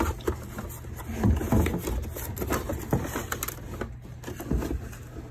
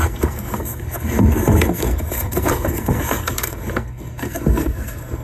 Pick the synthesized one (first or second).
second